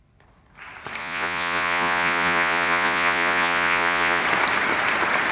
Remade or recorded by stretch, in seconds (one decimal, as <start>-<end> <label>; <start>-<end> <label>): 0.0-1.0 recorded; 1.0-4.2 remade; 4.2-5.3 recorded